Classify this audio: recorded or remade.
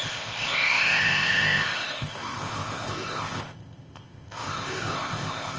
remade